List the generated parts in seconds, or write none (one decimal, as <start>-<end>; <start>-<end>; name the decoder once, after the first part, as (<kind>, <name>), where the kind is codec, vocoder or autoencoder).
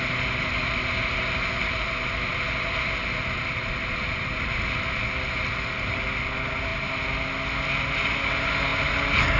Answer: none